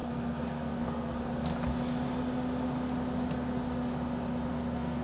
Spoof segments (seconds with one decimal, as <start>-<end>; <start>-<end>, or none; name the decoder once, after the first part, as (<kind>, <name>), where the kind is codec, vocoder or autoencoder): 0.0-1.5 (codec, SNAC); 4.5-5.0